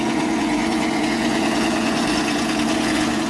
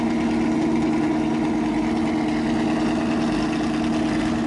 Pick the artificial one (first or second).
first